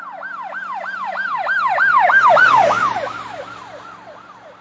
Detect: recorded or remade recorded